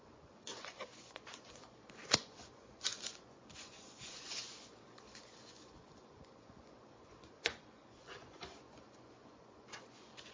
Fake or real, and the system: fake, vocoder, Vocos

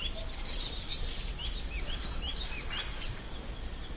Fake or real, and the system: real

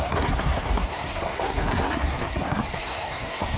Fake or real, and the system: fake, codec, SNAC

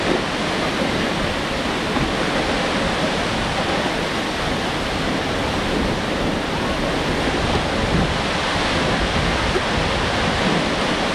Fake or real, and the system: real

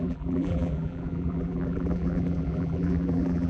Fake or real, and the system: fake, vocoder, BigVGAN v2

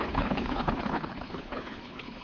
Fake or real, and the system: fake, codec, HILCodec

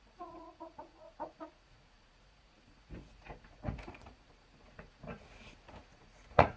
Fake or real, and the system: fake, vocoder, Vocos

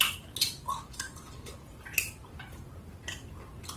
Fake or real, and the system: real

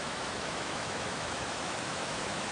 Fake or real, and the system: fake, autoencoder, DAC-VAE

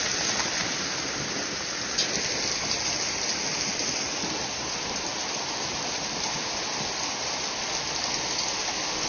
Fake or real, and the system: real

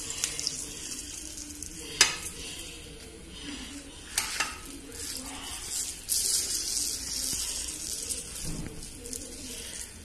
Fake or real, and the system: real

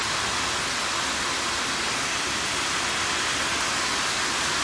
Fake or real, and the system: real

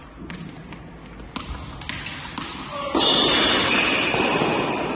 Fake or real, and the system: real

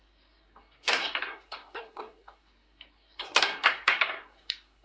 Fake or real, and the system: fake, codec, SNAC